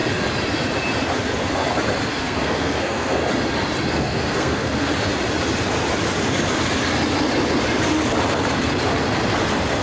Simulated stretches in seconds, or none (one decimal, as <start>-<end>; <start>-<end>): 2.2-3.2; 3.9-4.9

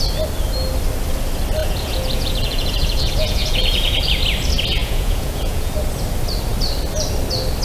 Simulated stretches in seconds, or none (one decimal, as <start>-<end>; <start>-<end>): 1.6-4.2; 4.8-5.7

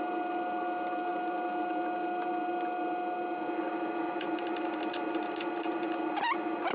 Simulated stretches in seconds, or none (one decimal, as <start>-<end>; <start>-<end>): none

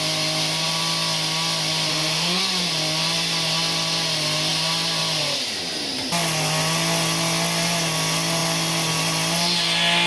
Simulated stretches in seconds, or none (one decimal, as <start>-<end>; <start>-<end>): 1.9-2.4

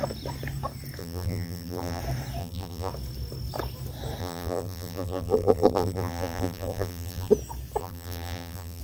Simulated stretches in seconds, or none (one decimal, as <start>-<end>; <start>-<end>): 1.0-2.0; 2.4-2.9; 4.2-7.3; 7.8-8.8